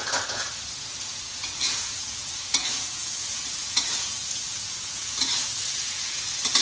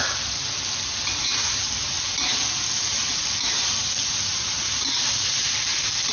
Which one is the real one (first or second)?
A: second